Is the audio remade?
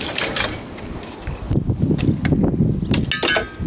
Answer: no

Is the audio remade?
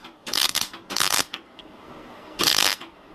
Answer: yes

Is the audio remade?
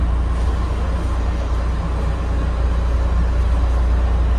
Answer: no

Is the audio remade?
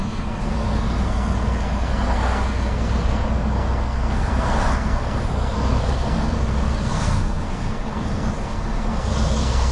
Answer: yes